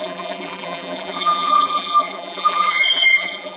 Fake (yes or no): yes